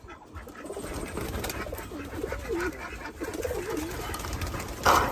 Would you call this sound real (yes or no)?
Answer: yes